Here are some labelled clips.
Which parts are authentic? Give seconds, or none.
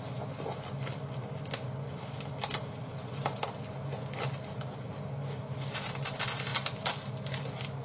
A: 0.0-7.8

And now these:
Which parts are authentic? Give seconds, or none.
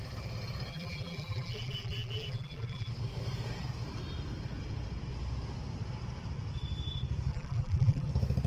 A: 0.0-0.7; 2.9-7.3; 8.1-8.5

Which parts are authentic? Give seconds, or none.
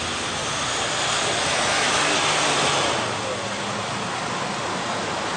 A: 0.0-5.4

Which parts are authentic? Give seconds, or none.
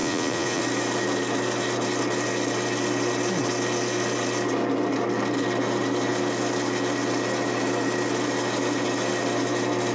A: 0.6-9.9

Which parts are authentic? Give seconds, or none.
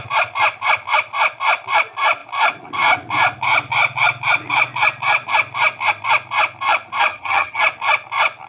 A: 0.0-7.1; 7.6-8.5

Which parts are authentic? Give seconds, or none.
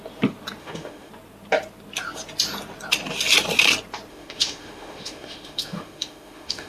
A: 0.0-0.6; 1.1-4.1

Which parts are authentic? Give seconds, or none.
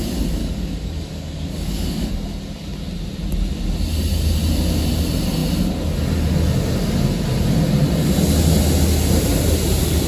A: 0.0-0.4; 2.1-10.1